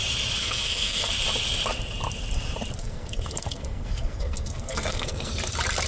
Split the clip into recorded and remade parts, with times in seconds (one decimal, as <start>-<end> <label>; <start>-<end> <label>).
0.0-0.4 recorded; 0.4-1.1 remade; 1.1-2.8 recorded; 2.8-5.3 remade; 5.3-5.9 recorded